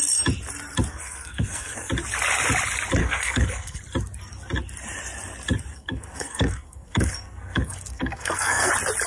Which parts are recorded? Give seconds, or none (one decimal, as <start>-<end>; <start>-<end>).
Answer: 0.0-0.9; 1.9-3.0; 3.8-5.7; 8.7-9.1